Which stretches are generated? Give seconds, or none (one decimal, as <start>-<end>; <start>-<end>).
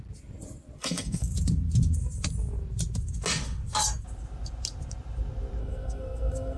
0.8-1.3; 5.6-6.6